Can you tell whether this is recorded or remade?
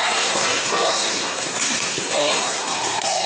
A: remade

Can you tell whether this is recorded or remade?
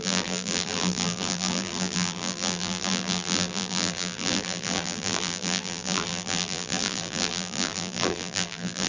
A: remade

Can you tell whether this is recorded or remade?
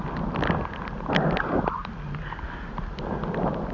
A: recorded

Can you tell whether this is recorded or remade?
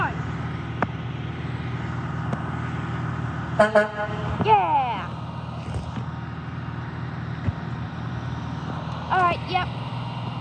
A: recorded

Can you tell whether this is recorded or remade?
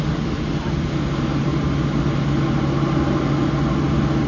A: recorded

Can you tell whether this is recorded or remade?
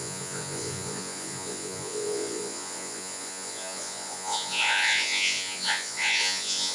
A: remade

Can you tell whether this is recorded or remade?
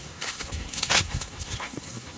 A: remade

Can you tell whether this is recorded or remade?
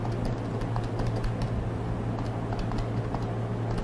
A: recorded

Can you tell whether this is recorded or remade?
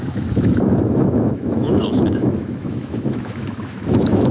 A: remade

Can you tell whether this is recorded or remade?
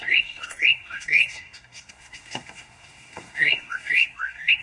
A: remade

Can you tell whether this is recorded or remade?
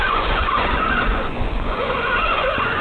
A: remade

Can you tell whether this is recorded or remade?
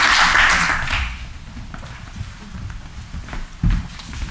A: recorded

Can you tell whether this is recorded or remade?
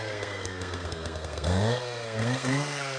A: remade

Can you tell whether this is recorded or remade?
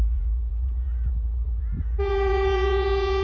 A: remade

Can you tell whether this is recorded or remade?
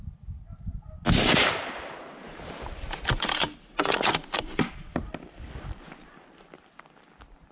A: recorded